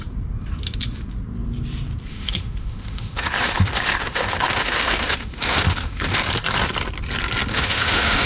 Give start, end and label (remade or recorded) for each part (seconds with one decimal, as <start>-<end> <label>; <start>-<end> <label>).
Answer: 0.0-2.1 recorded; 2.1-6.2 remade; 6.2-7.5 recorded; 7.5-8.3 remade